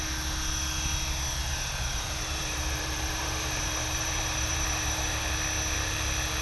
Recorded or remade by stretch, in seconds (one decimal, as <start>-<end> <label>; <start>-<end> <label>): 0.0-1.4 recorded; 1.4-5.2 remade; 5.2-6.4 recorded